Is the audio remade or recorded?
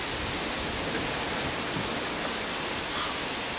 recorded